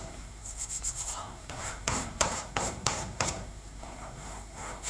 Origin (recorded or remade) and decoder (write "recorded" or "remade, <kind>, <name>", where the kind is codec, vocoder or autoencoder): remade, codec, SNAC